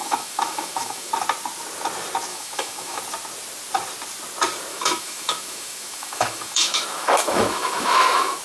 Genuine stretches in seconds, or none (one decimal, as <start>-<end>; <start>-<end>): 1.1-2.3; 3.0-4.7